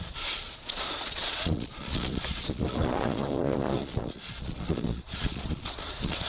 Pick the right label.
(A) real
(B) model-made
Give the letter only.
B